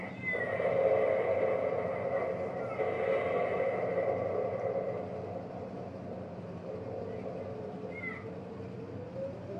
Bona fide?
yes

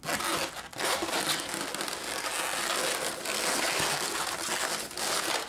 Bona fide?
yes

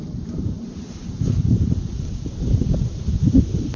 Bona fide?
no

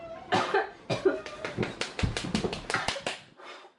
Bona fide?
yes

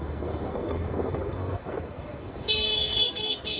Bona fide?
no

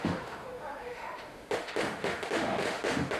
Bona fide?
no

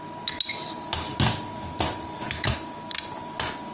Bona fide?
yes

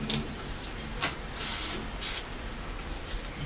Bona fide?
yes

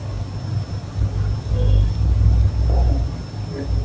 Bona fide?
yes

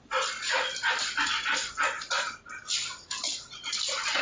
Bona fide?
yes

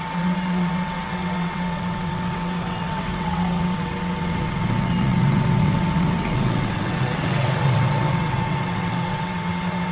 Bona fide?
no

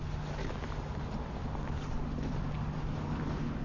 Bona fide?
yes